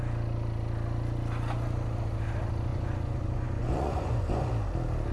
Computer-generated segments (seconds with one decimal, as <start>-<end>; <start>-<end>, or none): 2.7-4.4